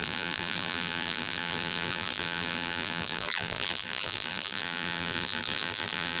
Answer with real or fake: fake